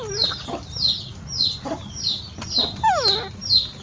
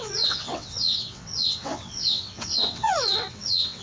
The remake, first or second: second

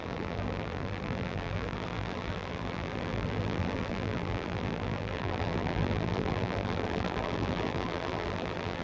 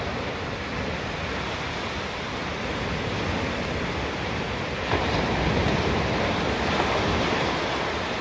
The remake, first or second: first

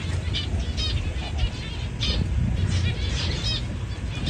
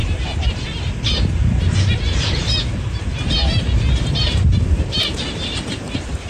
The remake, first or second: second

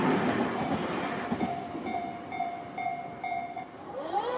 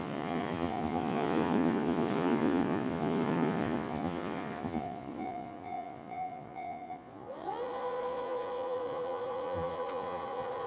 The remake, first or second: second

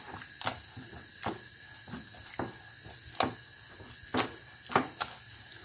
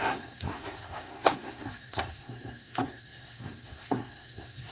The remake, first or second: second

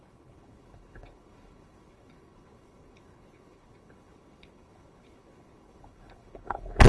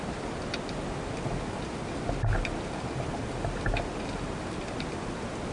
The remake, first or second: first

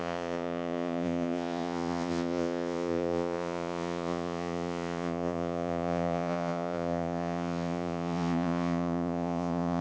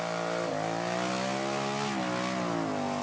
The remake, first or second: first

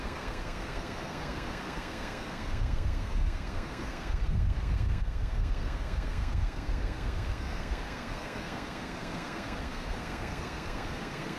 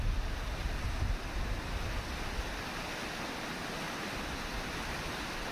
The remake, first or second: first